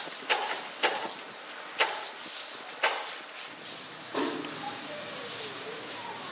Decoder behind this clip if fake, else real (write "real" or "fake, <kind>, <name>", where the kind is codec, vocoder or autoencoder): real